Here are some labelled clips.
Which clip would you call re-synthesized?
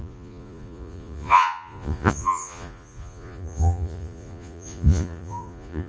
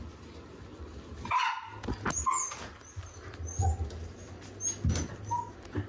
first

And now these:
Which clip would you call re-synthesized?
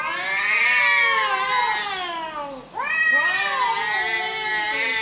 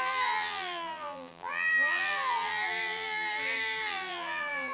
second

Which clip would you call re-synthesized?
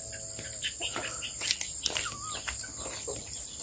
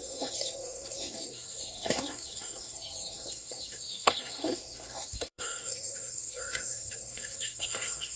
second